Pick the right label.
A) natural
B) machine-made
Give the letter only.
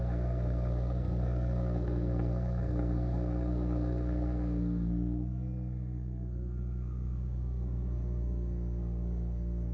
B